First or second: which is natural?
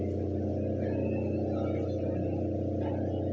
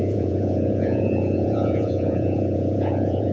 first